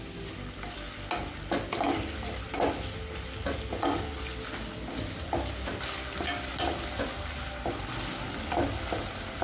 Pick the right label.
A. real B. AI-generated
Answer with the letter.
A